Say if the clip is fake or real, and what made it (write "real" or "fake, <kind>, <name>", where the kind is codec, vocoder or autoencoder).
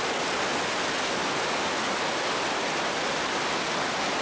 real